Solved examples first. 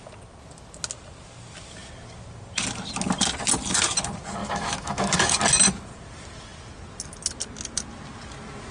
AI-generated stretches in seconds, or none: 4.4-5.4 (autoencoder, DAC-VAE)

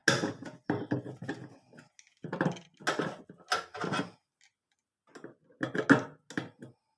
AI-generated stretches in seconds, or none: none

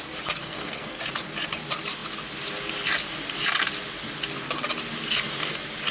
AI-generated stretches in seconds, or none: 0.4-1.0 (codec, SNAC)

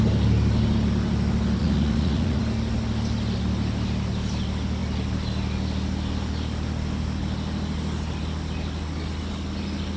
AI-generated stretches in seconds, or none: 1.6-2.4 (vocoder, Vocos)

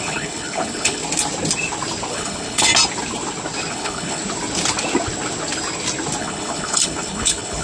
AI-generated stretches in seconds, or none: 0.0-1.0 (codec, HILCodec); 2.1-2.7; 3.7-4.2; 6.2-7.6

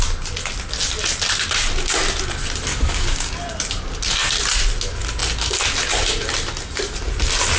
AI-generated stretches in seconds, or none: 2.7-3.3 (codec, DAC)